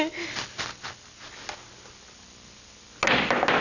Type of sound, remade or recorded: recorded